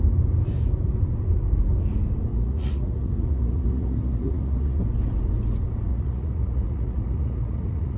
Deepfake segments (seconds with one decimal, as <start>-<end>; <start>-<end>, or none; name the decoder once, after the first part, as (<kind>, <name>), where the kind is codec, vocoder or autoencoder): 2.3-4.8 (vocoder, Vocos); 5.9-8.0